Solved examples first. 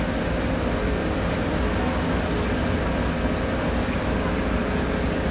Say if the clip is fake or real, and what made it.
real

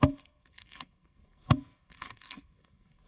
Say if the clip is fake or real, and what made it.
fake, codec, SNAC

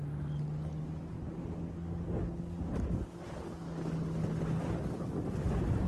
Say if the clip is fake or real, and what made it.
real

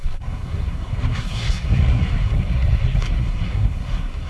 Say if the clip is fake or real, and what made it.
fake, codec, SNAC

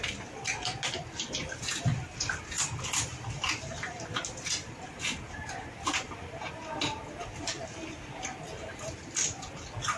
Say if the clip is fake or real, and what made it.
real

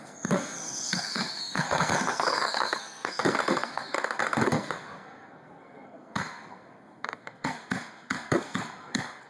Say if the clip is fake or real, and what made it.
fake, codec, SNAC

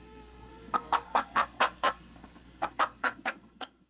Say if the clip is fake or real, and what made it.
fake, codec, SNAC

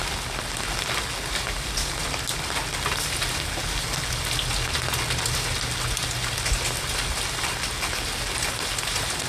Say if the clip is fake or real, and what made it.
real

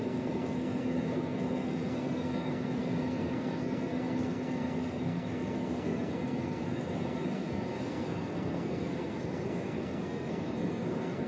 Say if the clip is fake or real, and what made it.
fake, codec, SNAC